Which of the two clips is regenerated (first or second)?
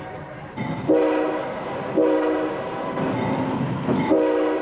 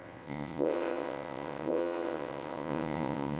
second